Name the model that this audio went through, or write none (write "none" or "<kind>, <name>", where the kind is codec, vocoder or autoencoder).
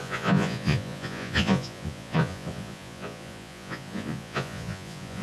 vocoder, Vocos